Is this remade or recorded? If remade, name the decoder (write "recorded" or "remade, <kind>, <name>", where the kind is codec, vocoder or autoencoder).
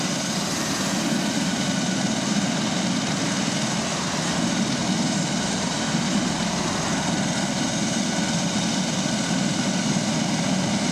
recorded